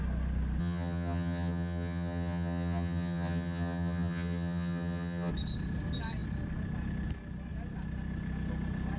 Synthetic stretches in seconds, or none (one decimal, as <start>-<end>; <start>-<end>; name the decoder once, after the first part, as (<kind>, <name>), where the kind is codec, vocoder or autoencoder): 0.6-5.3 (vocoder, HiFi-GAN)